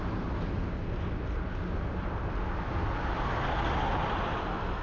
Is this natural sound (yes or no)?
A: yes